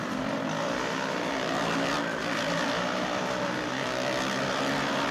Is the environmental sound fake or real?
real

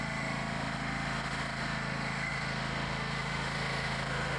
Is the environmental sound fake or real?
fake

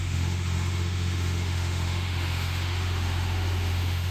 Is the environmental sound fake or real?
fake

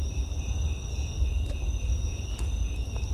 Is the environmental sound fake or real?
real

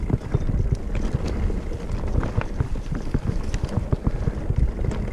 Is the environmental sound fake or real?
real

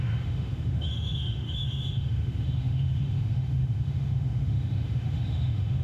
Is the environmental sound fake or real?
fake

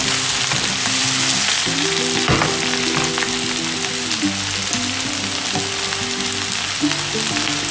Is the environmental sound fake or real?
real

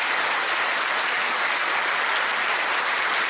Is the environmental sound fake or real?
real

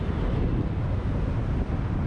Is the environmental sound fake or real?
real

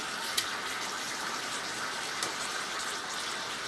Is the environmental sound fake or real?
real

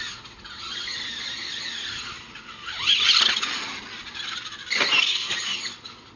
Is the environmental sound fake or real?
real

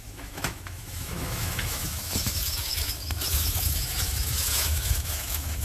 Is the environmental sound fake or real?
fake